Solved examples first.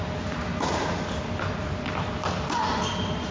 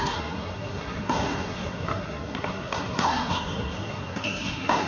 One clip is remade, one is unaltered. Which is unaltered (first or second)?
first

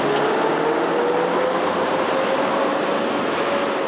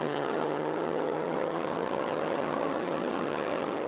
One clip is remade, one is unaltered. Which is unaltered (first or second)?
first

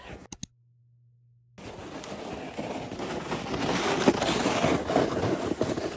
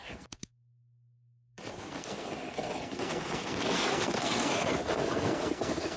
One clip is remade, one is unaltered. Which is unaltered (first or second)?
first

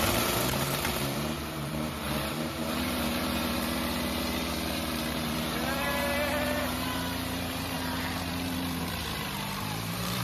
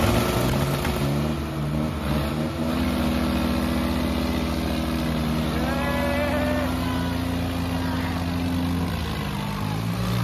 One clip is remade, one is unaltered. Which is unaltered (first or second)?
second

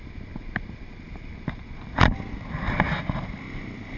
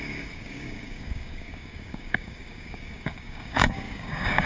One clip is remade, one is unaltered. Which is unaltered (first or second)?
first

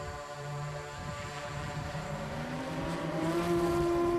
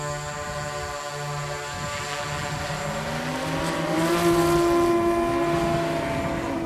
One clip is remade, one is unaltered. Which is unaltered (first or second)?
second